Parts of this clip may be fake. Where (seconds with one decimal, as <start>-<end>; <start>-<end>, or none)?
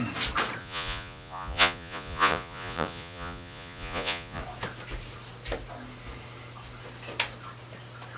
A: 0.6-4.4